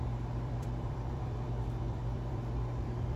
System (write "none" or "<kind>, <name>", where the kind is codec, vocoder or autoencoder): vocoder, BigVGAN v2